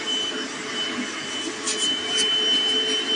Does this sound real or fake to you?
real